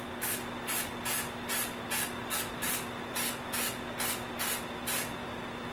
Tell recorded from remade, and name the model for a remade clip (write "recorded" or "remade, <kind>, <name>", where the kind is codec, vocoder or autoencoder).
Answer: recorded